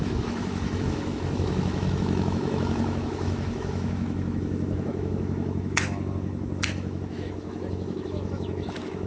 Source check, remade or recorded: remade